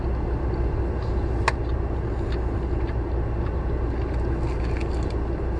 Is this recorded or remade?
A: recorded